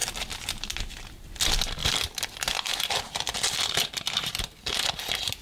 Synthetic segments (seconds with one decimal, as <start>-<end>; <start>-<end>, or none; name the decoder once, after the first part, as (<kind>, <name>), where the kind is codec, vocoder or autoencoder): 1.8-5.0 (vocoder, BigVGAN v2)